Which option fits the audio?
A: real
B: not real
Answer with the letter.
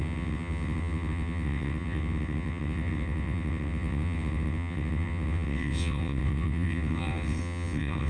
B